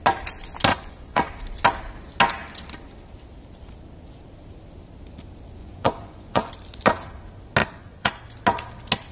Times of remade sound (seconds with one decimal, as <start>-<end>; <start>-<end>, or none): 0.7-1.3; 5.6-6.5; 7.6-8.2